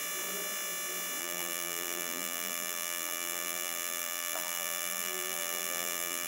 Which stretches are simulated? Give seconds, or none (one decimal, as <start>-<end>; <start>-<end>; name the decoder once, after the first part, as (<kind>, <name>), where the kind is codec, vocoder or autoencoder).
1.2-6.3 (vocoder, BigVGAN v2)